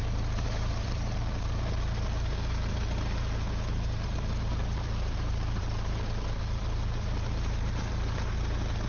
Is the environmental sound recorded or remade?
remade